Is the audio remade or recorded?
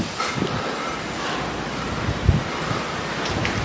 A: recorded